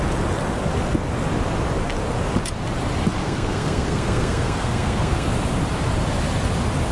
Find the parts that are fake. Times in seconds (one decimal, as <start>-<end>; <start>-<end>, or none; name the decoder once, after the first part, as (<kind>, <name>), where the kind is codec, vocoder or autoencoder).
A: 3.2-5.3 (codec, SNAC)